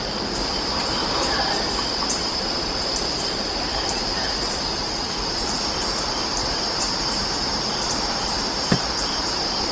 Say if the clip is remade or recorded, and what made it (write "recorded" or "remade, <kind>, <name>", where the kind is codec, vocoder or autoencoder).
remade, vocoder, BigVGAN v2